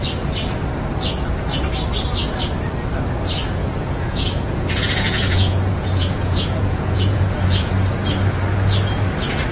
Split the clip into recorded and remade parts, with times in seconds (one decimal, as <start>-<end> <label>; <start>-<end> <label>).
0.0-3.6 recorded; 3.6-7.7 remade; 7.7-9.5 recorded